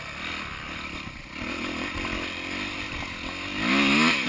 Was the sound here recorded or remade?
recorded